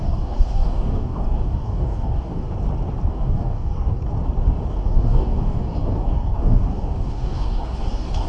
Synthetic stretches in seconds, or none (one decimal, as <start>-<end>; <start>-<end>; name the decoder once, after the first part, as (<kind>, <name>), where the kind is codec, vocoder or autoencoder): 0.0-2.5 (codec, DAC); 3.1-4.0; 4.7-8.3